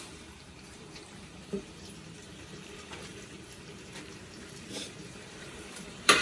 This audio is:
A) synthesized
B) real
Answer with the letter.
A